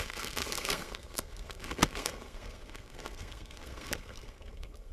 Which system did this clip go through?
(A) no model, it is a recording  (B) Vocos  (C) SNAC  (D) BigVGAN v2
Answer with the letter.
C